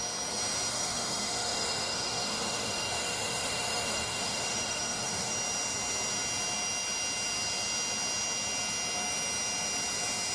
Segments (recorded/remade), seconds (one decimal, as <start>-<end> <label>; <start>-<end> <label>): 0.0-0.7 recorded; 0.7-5.3 remade; 5.3-10.3 recorded